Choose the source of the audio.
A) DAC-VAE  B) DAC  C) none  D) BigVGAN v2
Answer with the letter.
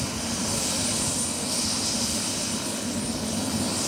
C